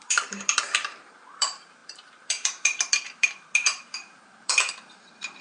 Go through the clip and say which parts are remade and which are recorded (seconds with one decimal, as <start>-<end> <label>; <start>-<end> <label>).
0.0-5.4 remade